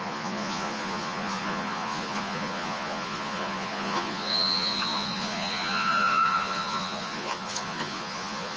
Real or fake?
fake